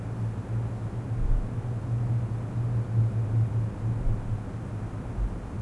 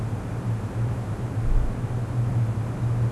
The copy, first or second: second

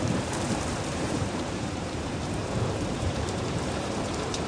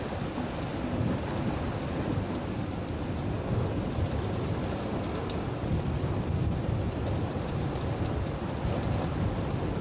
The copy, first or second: first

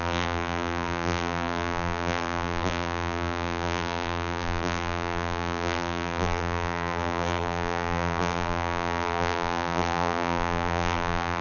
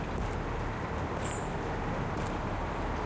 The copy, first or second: first